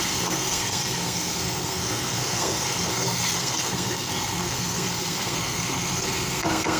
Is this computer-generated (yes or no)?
yes